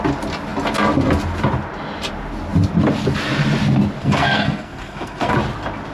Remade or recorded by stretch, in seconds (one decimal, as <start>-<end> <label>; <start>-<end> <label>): 0.0-4.0 recorded; 4.0-5.3 remade; 5.3-5.9 recorded